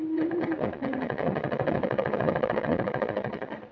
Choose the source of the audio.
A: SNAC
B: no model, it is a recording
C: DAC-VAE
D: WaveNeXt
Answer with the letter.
D